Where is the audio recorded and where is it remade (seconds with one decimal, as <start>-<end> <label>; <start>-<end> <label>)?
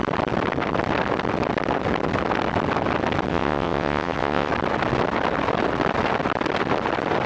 0.0-3.3 recorded; 3.3-4.5 remade; 4.5-7.3 recorded